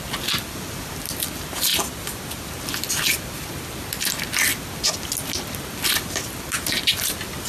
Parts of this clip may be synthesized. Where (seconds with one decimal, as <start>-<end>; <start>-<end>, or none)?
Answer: none